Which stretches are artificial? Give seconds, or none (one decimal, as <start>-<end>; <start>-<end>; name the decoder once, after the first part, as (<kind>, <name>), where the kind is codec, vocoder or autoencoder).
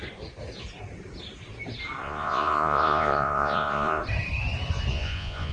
2.0-4.0 (vocoder, Vocos); 4.9-5.5